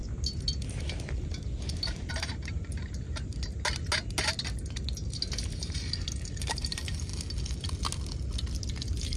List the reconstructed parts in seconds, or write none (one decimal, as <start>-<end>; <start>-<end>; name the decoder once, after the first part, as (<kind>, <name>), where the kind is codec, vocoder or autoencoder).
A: 1.0-3.3 (vocoder, BigVGAN v2); 6.4-7.1; 8.7-9.2